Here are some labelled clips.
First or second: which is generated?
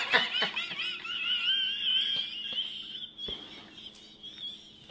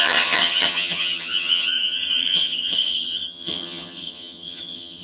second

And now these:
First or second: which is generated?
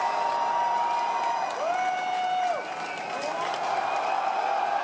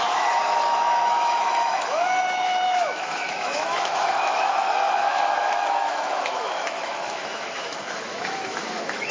second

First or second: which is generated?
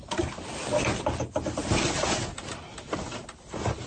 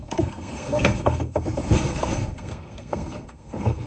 second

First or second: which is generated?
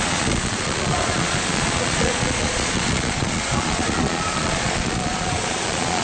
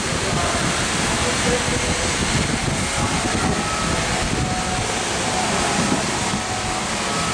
first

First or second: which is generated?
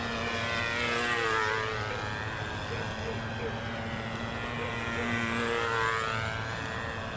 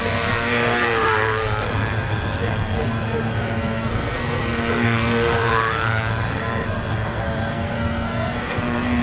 second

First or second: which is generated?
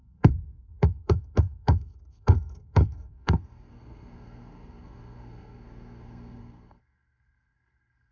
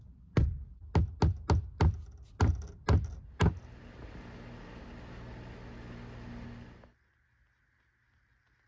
first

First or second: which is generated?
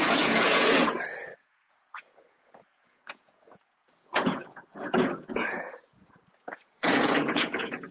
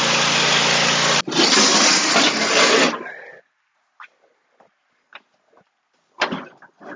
first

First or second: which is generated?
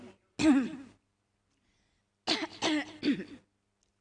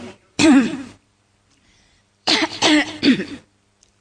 second